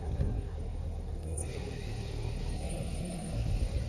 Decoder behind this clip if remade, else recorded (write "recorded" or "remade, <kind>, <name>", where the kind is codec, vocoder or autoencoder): remade, codec, SNAC